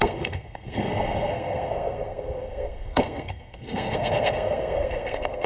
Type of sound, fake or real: fake